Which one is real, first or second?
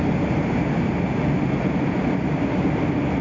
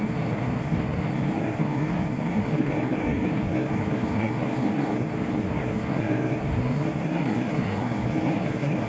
first